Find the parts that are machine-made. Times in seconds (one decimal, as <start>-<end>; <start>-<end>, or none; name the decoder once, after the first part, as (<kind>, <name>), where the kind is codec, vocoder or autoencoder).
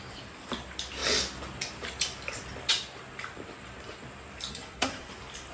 4.5-5.1 (codec, SNAC)